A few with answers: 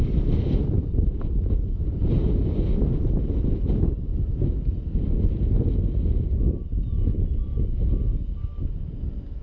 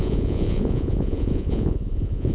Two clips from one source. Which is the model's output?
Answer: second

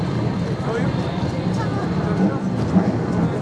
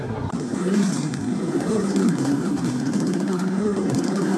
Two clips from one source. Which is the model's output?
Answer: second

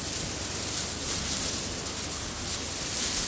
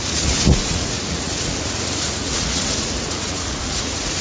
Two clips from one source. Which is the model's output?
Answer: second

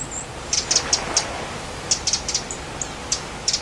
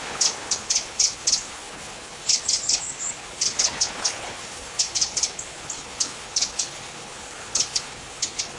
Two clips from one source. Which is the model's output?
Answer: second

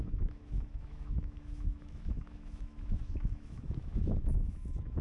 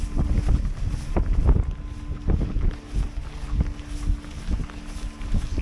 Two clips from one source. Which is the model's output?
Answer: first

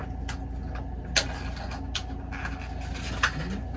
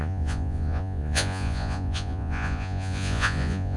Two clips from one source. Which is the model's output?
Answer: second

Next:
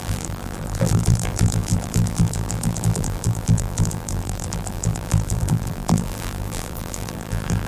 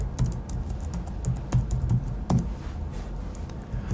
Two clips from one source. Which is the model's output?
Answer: first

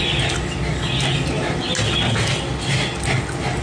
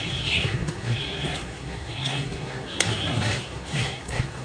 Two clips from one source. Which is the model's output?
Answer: second